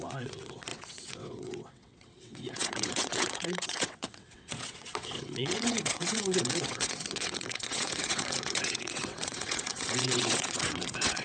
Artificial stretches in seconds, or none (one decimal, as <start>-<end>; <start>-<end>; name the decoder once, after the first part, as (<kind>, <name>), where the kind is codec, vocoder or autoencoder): 0.0-11.2 (vocoder, WaveNeXt)